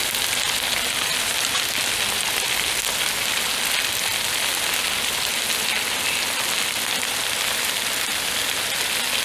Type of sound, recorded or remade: recorded